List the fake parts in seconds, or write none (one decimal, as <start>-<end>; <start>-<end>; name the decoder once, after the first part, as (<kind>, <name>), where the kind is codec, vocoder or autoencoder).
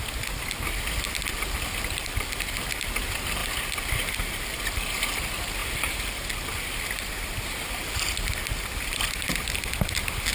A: none